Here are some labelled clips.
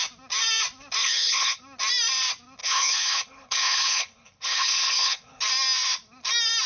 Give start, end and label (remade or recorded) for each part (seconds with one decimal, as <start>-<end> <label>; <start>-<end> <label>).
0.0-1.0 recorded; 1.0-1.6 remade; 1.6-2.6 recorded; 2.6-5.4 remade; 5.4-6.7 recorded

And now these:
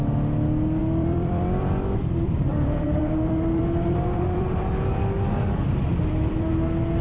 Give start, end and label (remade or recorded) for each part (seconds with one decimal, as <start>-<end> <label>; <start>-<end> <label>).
0.0-0.8 recorded; 0.8-4.6 remade; 4.6-5.9 recorded; 5.9-6.5 remade; 6.5-7.0 recorded

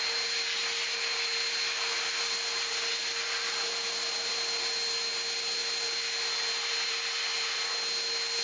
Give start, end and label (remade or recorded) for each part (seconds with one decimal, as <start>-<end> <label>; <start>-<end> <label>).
0.0-8.4 recorded

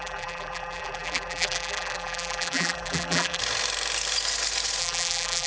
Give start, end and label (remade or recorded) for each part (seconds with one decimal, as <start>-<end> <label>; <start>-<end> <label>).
0.0-3.4 remade; 3.4-4.8 recorded; 4.8-5.5 remade